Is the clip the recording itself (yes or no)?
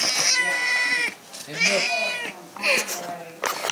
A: yes